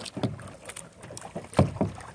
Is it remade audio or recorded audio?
recorded